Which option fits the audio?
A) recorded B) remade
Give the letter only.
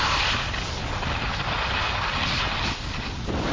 A